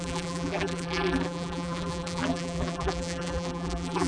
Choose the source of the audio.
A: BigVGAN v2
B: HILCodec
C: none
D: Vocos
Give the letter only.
A